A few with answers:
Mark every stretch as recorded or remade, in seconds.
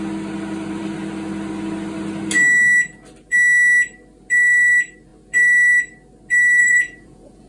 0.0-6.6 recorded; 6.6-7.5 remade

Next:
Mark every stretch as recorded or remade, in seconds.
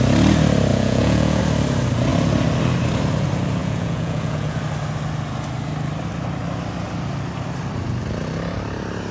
0.0-0.7 recorded; 0.7-1.4 remade; 1.4-3.6 recorded; 3.6-4.6 remade; 4.6-9.1 recorded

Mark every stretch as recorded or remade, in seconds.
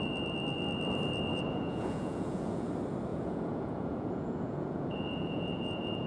0.0-1.3 recorded; 1.3-2.7 remade; 2.7-3.1 recorded; 3.1-6.1 remade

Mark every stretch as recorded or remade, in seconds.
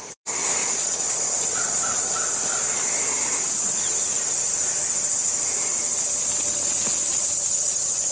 0.0-0.6 recorded; 0.6-1.8 remade; 1.8-7.1 recorded; 7.1-8.1 remade